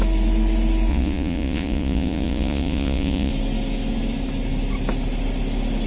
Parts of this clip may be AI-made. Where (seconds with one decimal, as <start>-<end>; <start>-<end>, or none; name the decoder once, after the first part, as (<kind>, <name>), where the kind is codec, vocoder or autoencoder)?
0.9-3.3 (vocoder, Vocos)